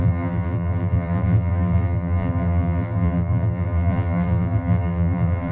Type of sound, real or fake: fake